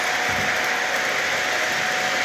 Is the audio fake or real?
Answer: real